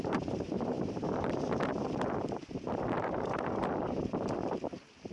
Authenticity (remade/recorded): remade